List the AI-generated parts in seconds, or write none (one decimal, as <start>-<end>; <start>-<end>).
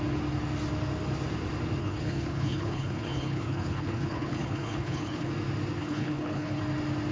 1.8-5.3; 5.8-6.6